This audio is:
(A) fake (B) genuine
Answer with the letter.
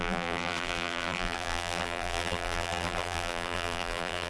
A